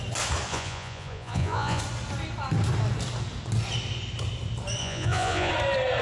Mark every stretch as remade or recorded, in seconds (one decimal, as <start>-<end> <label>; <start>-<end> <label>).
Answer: 0.0-0.5 recorded; 0.5-1.8 remade; 1.8-4.8 recorded; 4.8-5.5 remade; 5.5-6.0 recorded